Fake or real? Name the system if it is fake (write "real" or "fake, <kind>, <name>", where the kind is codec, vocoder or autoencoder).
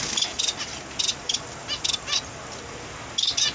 real